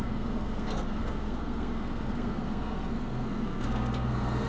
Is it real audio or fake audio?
fake